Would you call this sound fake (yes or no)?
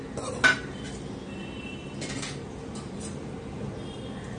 no